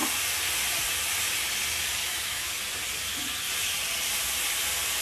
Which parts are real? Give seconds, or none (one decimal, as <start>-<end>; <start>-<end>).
0.0-2.0; 2.6-5.0